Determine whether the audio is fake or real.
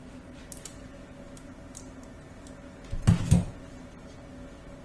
real